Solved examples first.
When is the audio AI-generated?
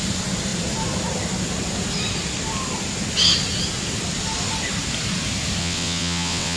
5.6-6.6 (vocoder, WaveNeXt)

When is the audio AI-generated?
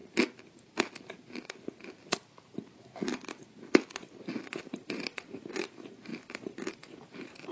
4.5-7.5 (vocoder, BigVGAN v2)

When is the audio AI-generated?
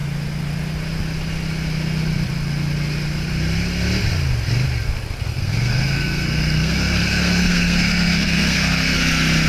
5.3-9.0 (codec, SNAC)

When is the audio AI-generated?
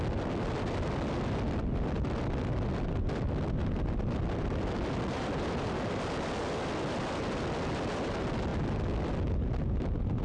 none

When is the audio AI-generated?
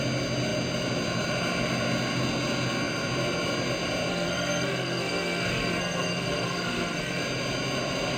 4.1-7.2 (codec, SNAC)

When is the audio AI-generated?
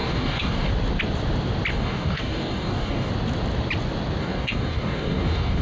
0.0-0.7 (codec, DAC); 1.7-3.1; 4.2-5.6